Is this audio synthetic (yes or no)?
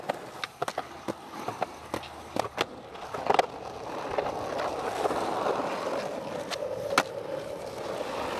no